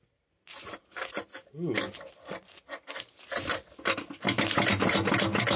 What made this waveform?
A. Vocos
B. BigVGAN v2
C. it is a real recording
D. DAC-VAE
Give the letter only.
C